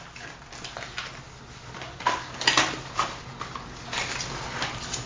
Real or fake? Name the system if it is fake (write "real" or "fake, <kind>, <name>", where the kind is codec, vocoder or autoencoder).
real